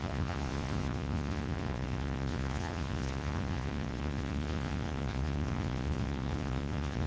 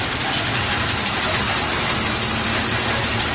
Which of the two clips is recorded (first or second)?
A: second